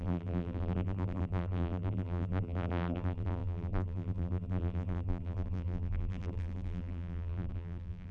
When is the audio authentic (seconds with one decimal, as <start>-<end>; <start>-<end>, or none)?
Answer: none